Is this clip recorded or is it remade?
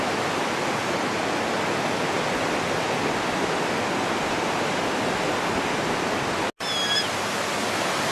recorded